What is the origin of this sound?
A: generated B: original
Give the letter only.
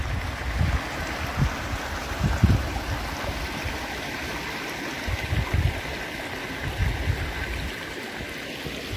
B